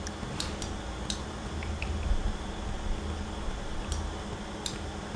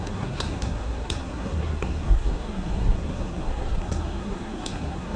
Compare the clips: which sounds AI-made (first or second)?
second